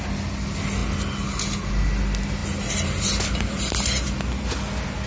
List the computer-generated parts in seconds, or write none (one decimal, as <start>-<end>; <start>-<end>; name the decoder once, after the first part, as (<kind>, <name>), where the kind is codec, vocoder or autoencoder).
none